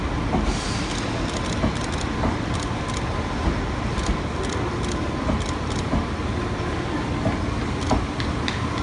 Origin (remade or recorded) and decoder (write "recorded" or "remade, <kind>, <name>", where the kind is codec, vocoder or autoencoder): recorded